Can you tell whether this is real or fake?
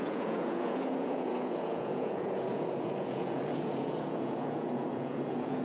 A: fake